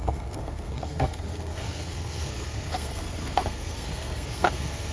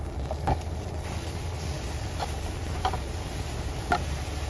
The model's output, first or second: first